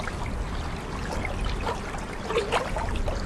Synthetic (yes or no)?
no